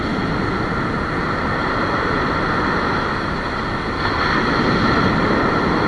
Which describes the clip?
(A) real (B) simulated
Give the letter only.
A